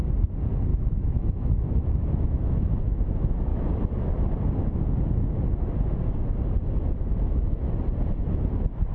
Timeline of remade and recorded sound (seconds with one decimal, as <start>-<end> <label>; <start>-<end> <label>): 0.0-0.7 recorded; 0.7-2.6 remade; 2.6-3.5 recorded; 3.5-4.1 remade; 4.1-7.1 recorded; 7.1-7.7 remade; 7.7-8.9 recorded